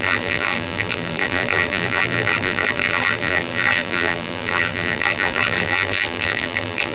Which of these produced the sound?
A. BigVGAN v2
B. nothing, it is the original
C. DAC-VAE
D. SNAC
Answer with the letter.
A